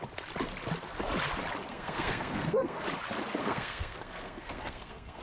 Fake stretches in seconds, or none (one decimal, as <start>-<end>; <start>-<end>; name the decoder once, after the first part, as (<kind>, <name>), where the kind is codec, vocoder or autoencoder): 1.7-2.8 (codec, SNAC); 3.4-5.2